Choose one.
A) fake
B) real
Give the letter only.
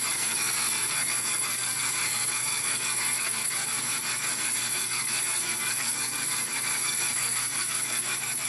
A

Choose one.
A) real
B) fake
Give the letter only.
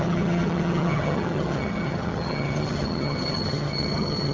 B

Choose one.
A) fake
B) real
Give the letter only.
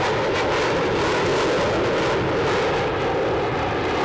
B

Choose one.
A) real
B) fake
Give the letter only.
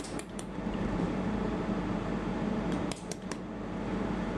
B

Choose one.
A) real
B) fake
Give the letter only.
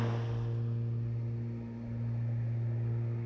A